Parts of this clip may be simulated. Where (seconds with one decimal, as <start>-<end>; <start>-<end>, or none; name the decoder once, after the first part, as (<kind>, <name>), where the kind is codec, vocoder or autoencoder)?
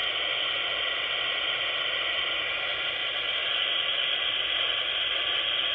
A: 3.4-5.7 (vocoder, BigVGAN v2)